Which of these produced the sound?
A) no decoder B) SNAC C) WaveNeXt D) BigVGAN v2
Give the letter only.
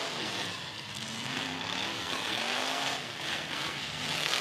B